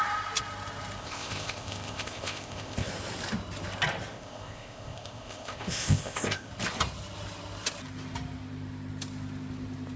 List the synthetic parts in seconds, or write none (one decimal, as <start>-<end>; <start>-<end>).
1.0-2.9; 4.1-6.5